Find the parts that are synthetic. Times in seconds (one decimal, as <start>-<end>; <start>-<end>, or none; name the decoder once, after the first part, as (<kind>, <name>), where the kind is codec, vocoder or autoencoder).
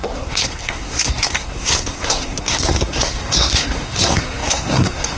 0.0-5.2 (codec, SNAC)